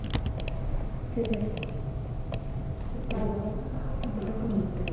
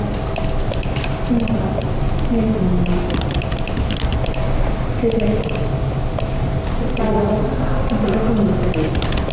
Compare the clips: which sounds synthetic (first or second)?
first